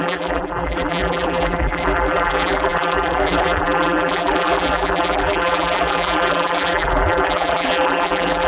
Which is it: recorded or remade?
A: remade